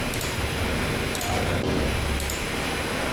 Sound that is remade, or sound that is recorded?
recorded